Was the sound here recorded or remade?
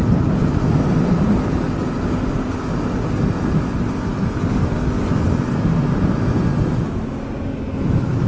recorded